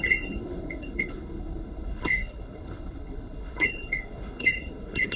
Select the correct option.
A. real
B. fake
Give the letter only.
B